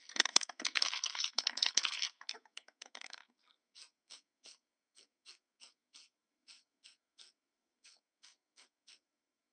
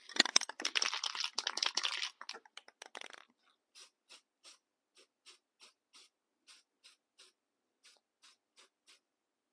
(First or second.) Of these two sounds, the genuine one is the second